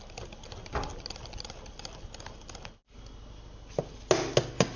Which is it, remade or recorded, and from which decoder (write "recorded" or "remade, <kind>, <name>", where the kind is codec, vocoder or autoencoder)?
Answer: recorded